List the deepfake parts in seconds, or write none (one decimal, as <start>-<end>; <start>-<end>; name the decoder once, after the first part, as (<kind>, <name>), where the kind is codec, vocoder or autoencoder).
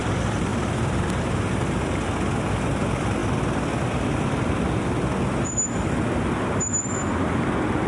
0.5-1.2 (vocoder, BigVGAN v2)